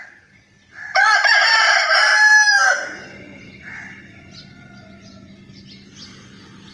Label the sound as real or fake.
real